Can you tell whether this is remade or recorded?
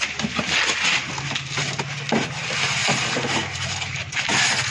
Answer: recorded